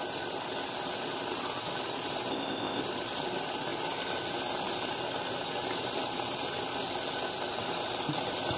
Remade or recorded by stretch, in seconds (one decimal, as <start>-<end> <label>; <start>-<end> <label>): 0.0-2.3 recorded; 2.3-2.8 remade; 2.8-8.6 recorded